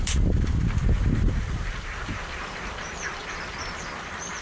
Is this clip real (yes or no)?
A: yes